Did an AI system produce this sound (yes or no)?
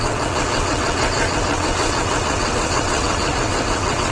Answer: yes